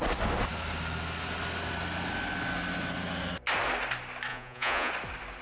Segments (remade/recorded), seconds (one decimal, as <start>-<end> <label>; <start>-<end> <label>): 0.0-4.3 recorded; 4.3-4.9 remade; 4.9-5.4 recorded